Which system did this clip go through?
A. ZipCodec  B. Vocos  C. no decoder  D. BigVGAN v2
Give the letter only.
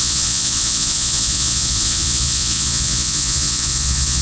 B